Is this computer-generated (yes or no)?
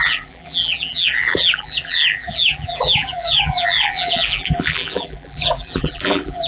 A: yes